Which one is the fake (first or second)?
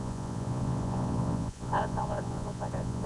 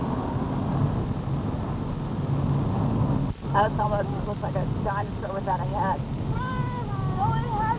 first